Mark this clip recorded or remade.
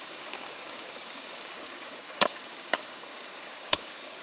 remade